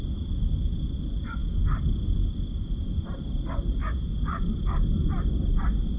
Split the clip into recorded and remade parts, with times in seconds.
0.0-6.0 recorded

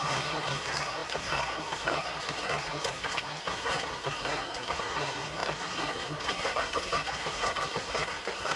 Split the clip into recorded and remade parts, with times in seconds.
0.0-8.6 remade

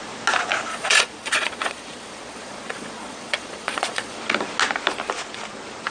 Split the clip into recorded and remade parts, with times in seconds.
0.0-0.7 recorded; 0.7-4.2 remade; 4.2-5.9 recorded

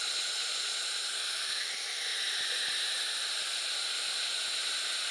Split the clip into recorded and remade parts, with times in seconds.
0.0-1.1 recorded; 1.1-1.7 remade; 1.7-5.1 recorded

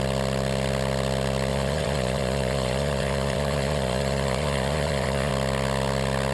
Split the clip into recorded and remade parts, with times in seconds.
0.0-1.5 recorded; 1.5-5.3 remade; 5.3-6.3 recorded

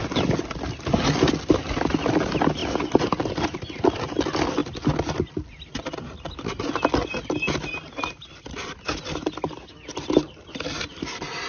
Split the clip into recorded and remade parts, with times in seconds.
0.0-11.5 recorded

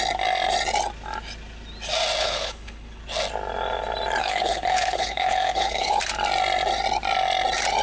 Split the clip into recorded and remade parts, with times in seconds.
0.0-2.2 recorded; 2.2-3.0 remade; 3.0-4.2 recorded; 4.2-6.0 remade; 6.0-7.8 recorded